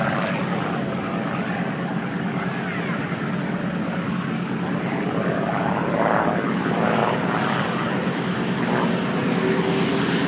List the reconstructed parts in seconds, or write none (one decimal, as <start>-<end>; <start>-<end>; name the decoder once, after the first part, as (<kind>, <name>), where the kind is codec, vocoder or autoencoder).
none